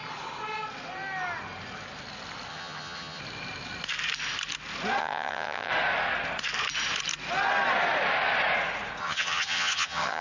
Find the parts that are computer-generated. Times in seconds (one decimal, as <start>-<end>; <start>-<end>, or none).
2.5-3.2; 5.0-5.7; 9.0-10.2

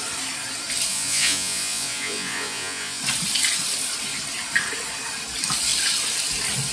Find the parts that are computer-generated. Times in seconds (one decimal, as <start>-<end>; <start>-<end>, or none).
0.9-3.0

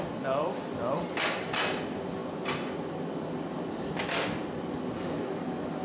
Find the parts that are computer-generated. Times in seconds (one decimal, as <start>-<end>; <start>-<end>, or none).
0.0-2.2

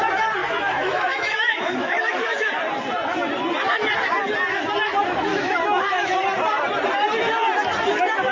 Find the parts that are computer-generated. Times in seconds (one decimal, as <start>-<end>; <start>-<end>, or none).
0.4-2.5; 5.3-6.2

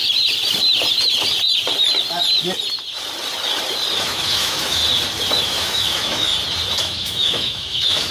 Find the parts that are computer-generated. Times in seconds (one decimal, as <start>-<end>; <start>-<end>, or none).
4.0-4.8; 5.4-6.3; 6.8-8.1

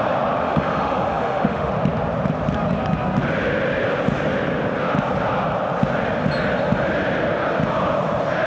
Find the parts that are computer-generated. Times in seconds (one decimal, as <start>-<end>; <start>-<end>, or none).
0.4-1.7